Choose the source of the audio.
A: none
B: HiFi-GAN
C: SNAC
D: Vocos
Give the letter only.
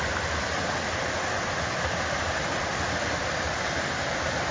A